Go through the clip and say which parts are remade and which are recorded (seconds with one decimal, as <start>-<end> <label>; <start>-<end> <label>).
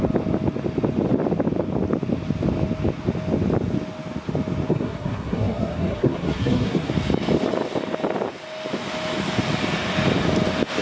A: 0.0-4.7 recorded; 4.7-6.9 remade; 6.9-10.8 recorded